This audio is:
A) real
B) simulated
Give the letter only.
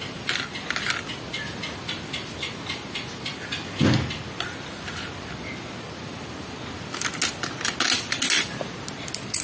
A